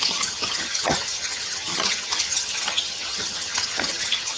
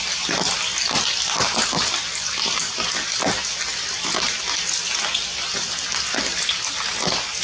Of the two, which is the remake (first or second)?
first